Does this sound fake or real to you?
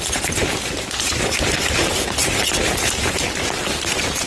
real